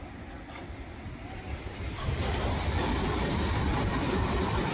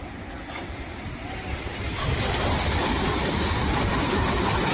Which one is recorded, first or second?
first